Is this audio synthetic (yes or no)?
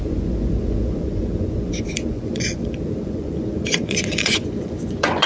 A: yes